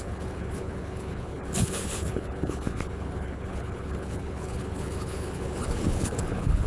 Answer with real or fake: fake